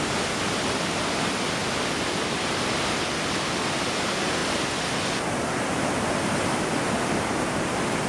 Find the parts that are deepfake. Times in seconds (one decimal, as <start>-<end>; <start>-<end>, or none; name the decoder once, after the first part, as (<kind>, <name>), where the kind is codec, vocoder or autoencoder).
none